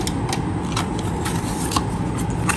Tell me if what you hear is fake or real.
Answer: real